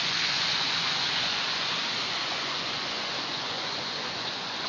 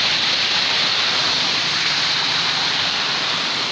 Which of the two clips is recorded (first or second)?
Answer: second